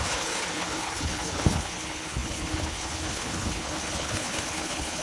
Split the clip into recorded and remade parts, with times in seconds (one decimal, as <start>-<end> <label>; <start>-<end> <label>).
0.0-5.0 remade